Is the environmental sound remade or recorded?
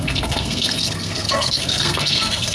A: remade